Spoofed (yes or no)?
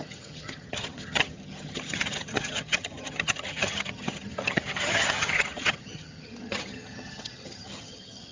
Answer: yes